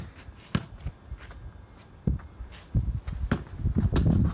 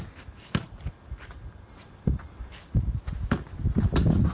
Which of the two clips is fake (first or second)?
second